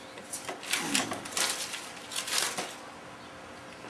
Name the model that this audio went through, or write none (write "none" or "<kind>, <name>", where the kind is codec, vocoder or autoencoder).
none